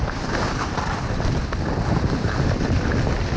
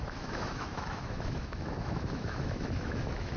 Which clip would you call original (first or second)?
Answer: first